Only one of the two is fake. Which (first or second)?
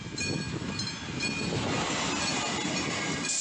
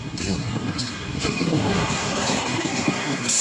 second